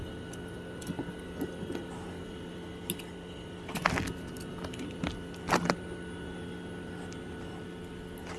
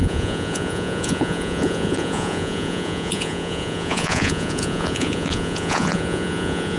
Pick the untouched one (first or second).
first